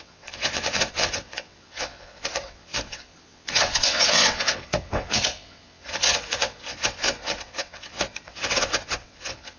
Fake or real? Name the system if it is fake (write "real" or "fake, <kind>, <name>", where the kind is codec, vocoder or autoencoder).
fake, vocoder, WaveNeXt